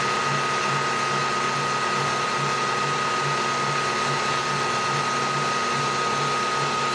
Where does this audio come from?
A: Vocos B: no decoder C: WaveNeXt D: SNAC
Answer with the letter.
B